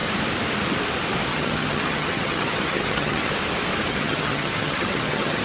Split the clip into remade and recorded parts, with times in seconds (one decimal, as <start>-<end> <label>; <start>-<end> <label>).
0.0-1.3 recorded; 1.3-3.3 remade; 3.3-3.9 recorded; 3.9-5.4 remade